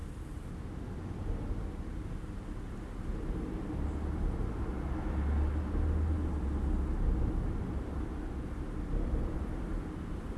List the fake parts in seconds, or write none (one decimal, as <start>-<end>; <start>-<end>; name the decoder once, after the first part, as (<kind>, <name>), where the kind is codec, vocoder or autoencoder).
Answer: none